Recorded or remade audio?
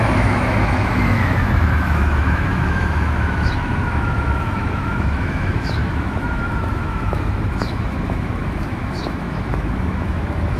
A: remade